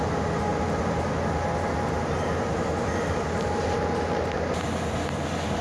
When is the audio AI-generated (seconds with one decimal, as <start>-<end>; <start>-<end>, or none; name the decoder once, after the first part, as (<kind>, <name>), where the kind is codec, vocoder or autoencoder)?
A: none